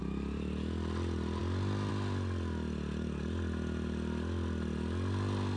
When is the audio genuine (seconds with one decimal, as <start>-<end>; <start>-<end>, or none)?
0.0-5.6